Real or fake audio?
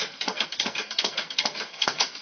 fake